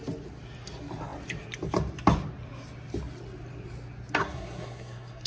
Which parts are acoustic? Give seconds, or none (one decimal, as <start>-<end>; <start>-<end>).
0.0-4.2